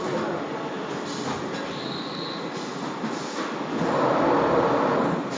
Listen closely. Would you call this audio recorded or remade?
recorded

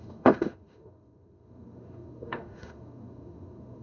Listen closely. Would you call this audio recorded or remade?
remade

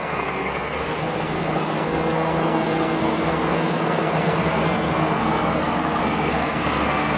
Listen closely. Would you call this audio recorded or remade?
remade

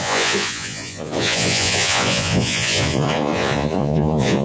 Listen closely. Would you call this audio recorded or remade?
remade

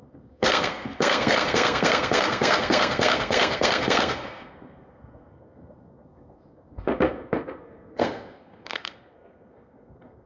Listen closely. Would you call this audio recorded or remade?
remade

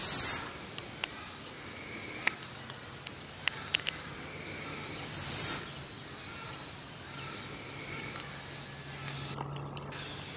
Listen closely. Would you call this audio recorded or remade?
recorded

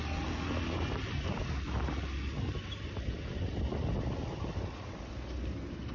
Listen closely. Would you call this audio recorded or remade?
recorded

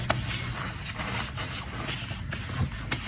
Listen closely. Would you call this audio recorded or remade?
recorded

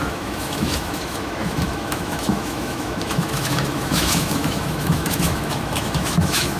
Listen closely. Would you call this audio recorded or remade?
remade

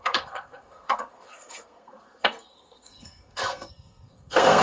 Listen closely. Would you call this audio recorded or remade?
remade